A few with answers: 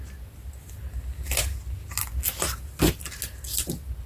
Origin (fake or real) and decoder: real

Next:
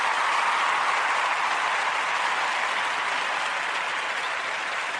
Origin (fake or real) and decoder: real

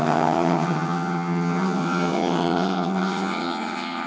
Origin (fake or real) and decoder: fake, vocoder, HiFi-GAN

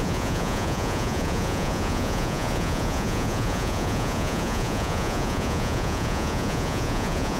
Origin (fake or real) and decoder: fake, vocoder, Vocos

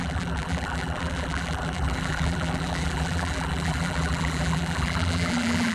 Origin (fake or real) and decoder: fake, vocoder, BigVGAN v2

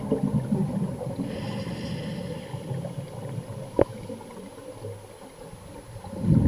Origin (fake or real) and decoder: real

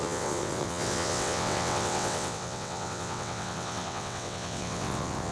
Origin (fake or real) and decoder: fake, vocoder, WaveNeXt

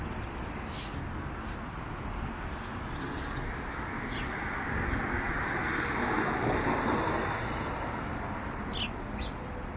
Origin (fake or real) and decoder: real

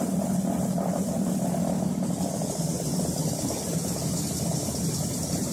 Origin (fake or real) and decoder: fake, vocoder, BigVGAN v2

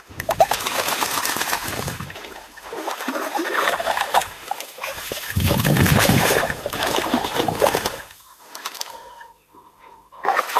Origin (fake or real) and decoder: fake, autoencoder, DAC-VAE